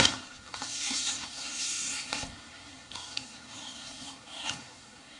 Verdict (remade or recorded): remade